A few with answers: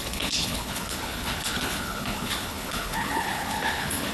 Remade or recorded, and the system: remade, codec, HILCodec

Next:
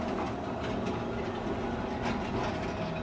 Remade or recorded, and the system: recorded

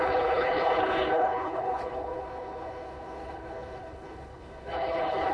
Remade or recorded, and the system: remade, codec, HILCodec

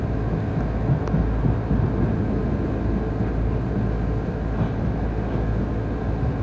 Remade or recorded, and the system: recorded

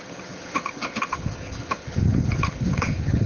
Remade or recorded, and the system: remade, codec, HILCodec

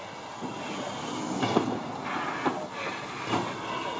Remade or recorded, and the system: recorded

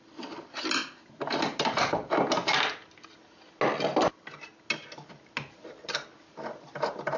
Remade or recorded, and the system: recorded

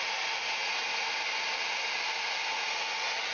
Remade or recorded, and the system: recorded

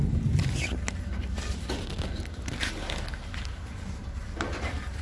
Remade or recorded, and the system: recorded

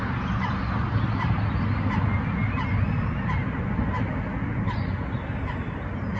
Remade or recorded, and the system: recorded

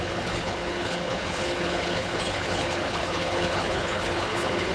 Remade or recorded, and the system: remade, codec, HILCodec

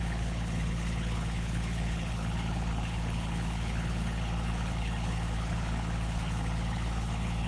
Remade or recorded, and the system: remade, codec, HILCodec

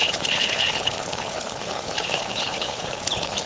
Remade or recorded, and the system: remade, codec, HILCodec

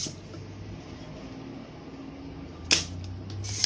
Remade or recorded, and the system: recorded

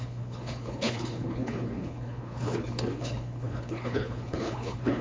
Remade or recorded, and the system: remade, codec, HILCodec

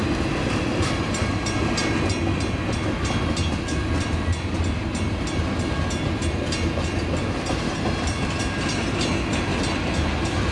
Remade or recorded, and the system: recorded